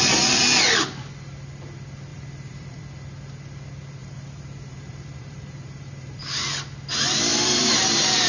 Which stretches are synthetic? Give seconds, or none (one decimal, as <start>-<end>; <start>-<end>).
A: 2.1-2.8; 4.0-6.6; 7.3-8.3